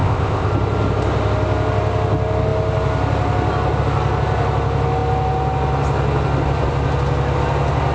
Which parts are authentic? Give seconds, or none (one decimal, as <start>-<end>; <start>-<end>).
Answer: 0.5-7.9

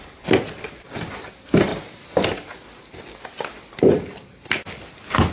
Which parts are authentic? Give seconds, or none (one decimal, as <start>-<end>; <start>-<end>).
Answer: 0.0-5.3

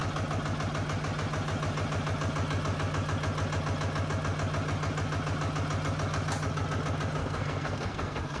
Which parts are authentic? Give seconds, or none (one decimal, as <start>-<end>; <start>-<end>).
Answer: 0.0-7.2

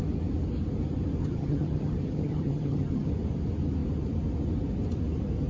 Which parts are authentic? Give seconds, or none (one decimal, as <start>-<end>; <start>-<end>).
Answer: 0.0-1.2; 3.1-5.5

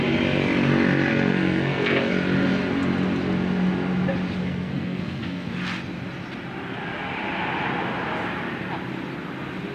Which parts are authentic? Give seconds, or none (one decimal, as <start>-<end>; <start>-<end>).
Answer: 0.0-1.1; 2.1-4.4; 5.5-9.7